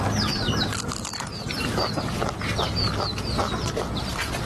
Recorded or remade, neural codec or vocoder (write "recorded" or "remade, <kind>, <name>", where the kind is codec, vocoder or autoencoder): recorded